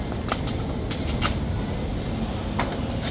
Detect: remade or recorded recorded